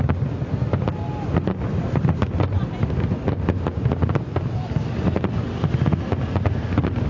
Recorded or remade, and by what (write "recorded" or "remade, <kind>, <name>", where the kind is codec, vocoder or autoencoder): recorded